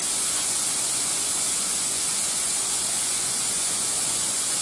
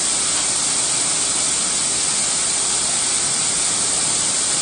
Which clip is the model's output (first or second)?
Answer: first